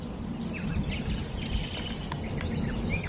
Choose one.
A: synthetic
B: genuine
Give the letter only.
B